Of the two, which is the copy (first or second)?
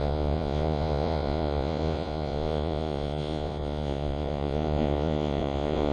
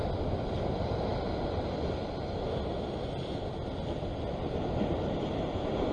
first